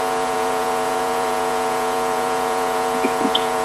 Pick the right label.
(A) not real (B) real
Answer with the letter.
A